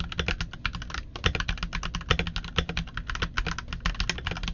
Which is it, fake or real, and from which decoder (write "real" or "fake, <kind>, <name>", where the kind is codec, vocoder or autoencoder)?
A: real